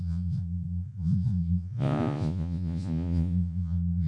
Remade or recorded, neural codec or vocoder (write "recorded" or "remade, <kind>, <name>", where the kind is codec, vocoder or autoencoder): remade, vocoder, Vocos